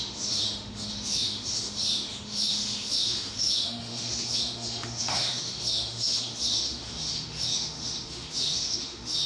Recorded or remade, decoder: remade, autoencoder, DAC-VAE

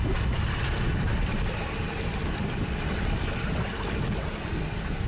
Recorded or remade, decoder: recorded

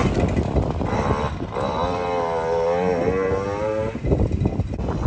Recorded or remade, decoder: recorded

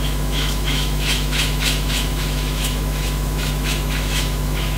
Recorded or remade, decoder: remade, autoencoder, DAC-VAE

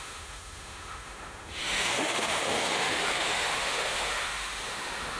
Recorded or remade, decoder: remade, autoencoder, DAC-VAE